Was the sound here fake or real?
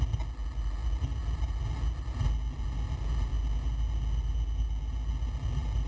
real